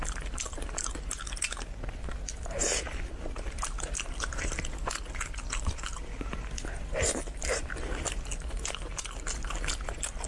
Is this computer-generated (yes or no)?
no